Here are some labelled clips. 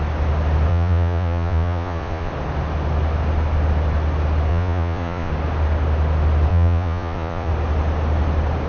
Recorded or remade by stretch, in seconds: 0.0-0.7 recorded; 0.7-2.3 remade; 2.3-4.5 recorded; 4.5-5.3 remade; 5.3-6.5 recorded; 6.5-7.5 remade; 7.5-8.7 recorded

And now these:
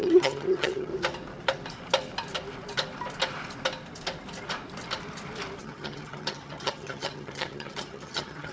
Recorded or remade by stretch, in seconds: 0.0-0.9 remade; 0.9-5.6 recorded; 5.6-8.5 remade

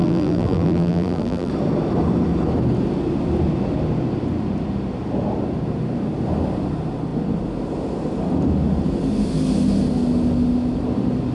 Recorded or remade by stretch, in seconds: 0.0-1.5 remade; 1.5-11.3 recorded

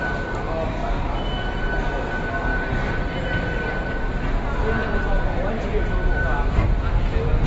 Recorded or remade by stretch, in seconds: 0.0-0.8 recorded; 0.8-1.3 remade; 1.3-2.5 recorded; 2.5-3.1 remade; 3.1-4.8 recorded; 4.8-6.5 remade; 6.5-7.5 recorded